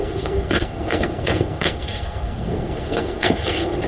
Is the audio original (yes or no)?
no